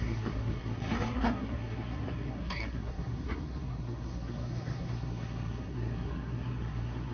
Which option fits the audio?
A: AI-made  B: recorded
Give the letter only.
A